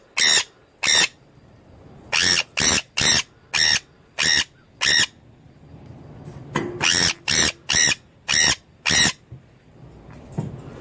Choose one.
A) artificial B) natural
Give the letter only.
B